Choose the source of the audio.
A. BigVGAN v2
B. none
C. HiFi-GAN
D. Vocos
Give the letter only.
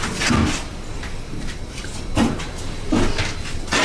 B